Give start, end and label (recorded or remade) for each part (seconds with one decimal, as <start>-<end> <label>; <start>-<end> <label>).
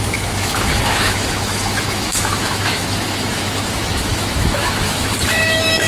0.0-5.9 remade